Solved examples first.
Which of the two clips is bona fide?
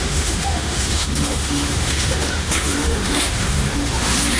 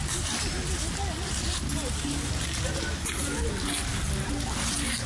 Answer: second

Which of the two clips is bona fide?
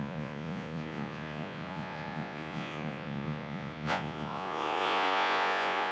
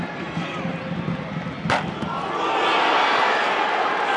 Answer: second